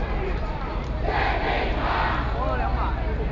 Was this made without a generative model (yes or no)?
yes